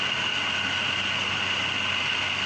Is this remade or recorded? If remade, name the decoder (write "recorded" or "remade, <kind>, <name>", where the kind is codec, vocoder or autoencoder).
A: recorded